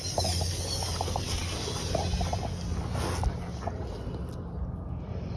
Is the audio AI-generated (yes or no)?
no